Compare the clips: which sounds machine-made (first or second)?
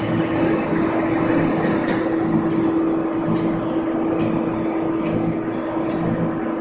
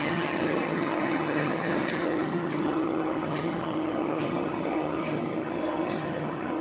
second